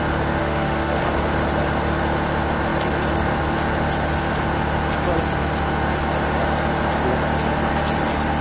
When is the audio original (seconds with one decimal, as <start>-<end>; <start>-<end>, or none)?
0.0-0.4; 1.0-8.4